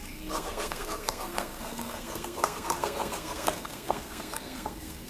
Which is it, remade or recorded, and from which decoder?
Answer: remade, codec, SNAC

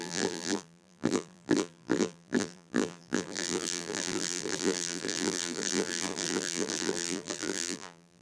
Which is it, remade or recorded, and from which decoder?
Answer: remade, vocoder, BigVGAN v2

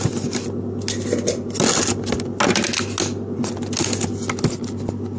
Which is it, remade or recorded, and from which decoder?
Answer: recorded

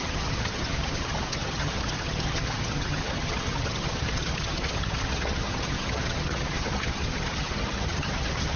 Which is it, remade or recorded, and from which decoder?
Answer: remade, vocoder, HiFi-GAN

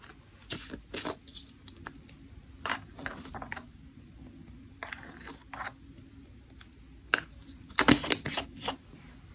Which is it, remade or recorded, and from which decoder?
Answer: recorded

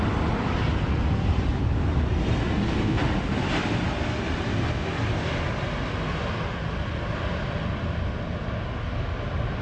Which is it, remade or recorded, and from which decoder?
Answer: recorded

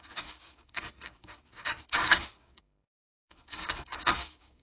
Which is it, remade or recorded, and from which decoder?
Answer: remade, codec, DAC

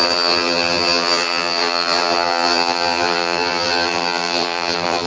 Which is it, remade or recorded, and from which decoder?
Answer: remade, vocoder, BigVGAN v2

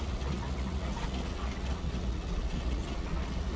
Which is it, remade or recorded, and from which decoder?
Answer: remade, vocoder, Vocos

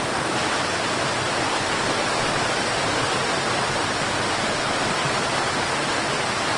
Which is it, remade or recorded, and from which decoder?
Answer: recorded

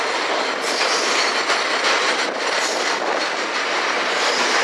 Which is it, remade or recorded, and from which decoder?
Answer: recorded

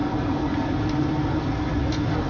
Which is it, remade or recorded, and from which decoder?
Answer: recorded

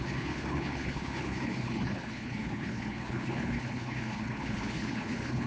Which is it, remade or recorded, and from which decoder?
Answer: remade, codec, HILCodec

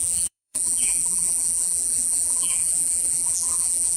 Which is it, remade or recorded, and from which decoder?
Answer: remade, vocoder, BigVGAN v2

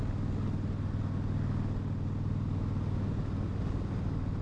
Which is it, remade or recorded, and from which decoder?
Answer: recorded